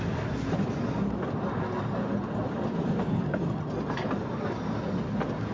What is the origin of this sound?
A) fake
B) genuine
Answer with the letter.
B